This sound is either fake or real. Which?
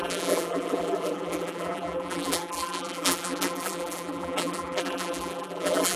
fake